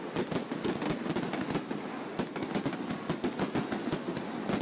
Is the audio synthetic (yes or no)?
no